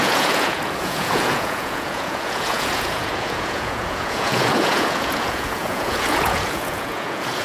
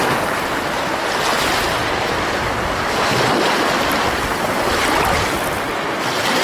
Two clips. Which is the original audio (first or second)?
second